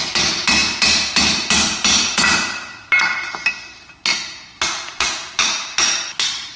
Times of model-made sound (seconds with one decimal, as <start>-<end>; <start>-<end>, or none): none